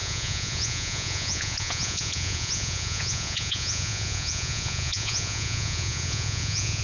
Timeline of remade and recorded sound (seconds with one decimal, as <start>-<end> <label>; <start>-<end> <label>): 0.0-6.8 remade